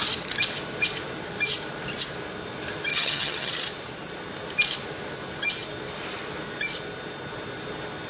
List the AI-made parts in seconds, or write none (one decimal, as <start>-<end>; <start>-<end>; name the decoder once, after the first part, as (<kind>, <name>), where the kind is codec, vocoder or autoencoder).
2.9-3.5 (vocoder, HiFi-GAN)